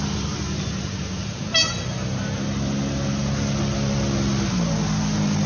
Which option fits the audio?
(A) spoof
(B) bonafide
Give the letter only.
B